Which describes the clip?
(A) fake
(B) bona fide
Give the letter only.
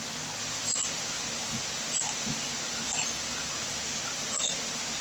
B